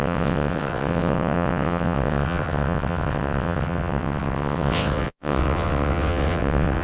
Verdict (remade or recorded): remade